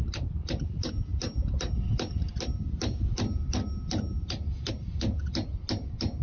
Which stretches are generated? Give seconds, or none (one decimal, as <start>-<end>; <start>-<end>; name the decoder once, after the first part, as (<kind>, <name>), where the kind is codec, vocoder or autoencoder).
none